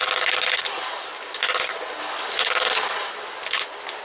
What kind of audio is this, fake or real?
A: real